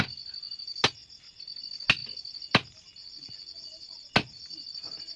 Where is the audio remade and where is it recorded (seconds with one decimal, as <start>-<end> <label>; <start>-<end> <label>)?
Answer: 0.0-5.2 recorded